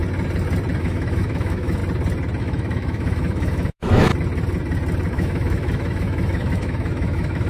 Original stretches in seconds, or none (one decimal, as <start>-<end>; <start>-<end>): 0.0-0.8; 1.8-2.4; 4.1-5.1